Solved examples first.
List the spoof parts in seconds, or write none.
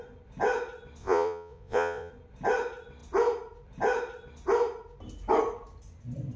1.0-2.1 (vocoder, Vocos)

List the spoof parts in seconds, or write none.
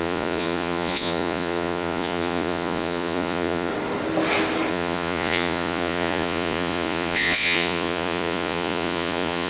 0.0-3.7 (vocoder, Vocos); 4.7-9.5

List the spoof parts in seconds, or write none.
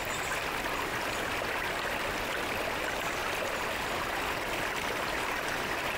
none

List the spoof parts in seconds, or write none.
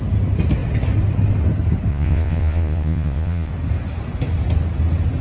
1.9-3.5 (vocoder, Vocos)